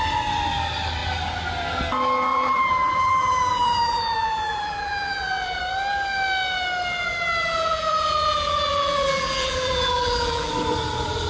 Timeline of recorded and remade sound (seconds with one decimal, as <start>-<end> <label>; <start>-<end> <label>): 0.0-2.3 recorded; 2.3-5.6 remade; 5.6-7.4 recorded; 7.4-10.5 remade; 10.5-11.3 recorded